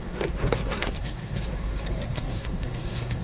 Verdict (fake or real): fake